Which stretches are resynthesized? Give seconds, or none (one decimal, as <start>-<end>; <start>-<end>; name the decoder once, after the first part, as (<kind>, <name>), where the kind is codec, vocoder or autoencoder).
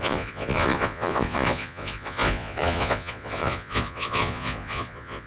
0.0-5.3 (vocoder, Vocos)